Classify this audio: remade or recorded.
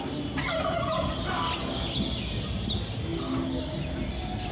recorded